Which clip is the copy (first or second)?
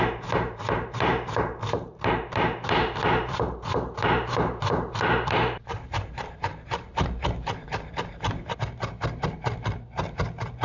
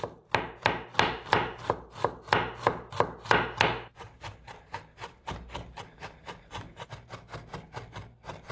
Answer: first